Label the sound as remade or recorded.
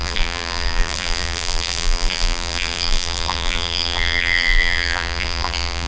remade